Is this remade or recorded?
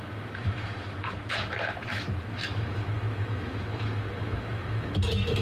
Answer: remade